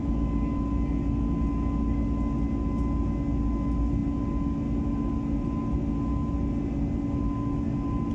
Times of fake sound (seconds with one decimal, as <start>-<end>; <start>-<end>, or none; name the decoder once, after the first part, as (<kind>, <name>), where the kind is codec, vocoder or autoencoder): none